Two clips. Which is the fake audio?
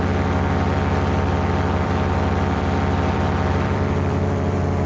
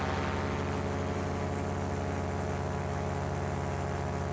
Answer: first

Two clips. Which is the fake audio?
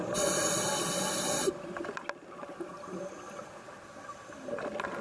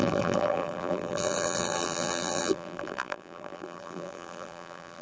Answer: second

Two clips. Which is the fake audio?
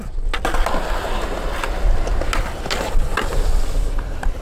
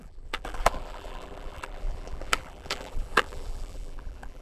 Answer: second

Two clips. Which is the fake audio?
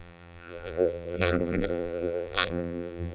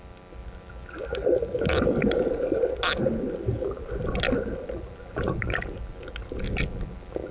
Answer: first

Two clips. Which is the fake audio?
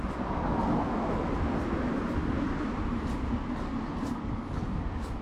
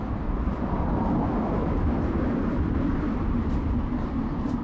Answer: second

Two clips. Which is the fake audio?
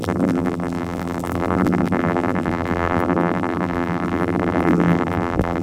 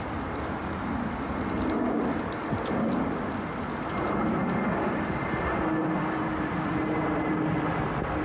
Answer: first